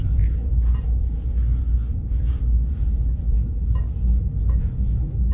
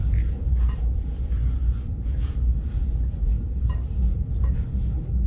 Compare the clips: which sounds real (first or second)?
first